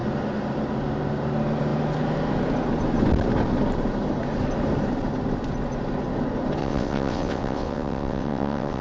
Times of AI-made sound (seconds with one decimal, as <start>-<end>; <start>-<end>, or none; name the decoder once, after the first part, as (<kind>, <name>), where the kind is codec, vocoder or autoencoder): 6.6-8.8 (vocoder, WaveNeXt)

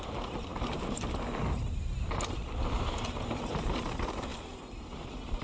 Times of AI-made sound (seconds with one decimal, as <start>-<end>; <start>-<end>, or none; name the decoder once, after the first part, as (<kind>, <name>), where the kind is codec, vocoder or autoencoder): none

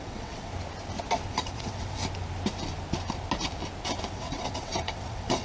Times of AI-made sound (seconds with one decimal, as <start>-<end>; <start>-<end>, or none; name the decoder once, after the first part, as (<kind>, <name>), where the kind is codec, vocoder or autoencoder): 0.0-0.5 (vocoder, WaveNeXt); 1.3-2.0; 4.1-5.4

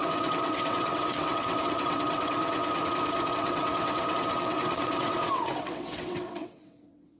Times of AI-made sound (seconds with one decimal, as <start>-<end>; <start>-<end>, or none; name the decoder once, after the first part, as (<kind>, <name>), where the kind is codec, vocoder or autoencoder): 0.0-2.6 (vocoder, WaveNeXt); 3.3-7.2